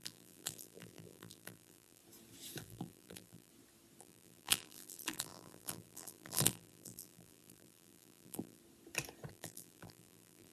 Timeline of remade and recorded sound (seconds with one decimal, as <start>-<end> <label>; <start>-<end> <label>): 0.0-2.0 remade; 2.0-2.6 recorded; 2.6-3.5 remade; 3.5-4.0 recorded; 4.0-8.6 remade; 8.6-9.3 recorded; 9.3-10.5 remade